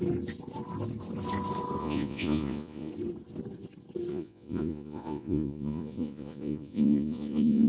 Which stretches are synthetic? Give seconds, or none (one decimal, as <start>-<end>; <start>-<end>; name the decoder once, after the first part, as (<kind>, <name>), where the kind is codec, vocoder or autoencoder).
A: 1.8-2.9 (vocoder, Vocos); 4.1-7.7

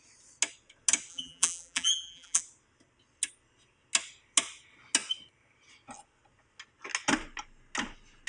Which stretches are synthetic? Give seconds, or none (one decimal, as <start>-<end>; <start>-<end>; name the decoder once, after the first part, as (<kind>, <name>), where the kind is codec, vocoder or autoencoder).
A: 1.1-2.4 (vocoder, BigVGAN v2)

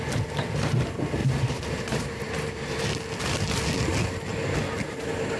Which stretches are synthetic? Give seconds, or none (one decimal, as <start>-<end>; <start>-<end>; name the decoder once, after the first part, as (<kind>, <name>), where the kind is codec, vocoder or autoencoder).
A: 1.2-2.8 (vocoder, BigVGAN v2)

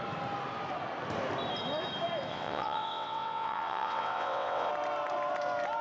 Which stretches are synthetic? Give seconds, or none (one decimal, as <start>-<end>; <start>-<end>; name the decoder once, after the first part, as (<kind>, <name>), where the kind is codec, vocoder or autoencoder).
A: 2.3-4.7 (vocoder, WaveNeXt)

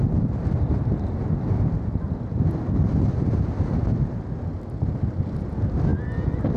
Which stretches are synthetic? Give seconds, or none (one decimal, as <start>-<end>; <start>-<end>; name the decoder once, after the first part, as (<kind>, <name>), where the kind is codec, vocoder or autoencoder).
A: none